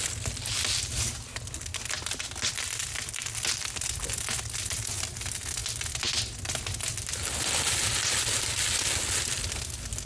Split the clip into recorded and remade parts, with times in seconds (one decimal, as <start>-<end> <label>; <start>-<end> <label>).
0.0-10.0 recorded